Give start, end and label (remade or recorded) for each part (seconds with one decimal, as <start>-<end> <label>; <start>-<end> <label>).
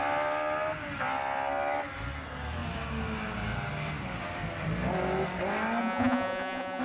0.0-5.8 recorded; 5.8-6.8 remade